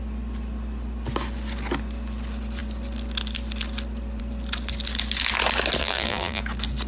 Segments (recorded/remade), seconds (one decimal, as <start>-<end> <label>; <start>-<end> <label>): 0.0-5.8 recorded; 5.8-6.4 remade; 6.4-6.9 recorded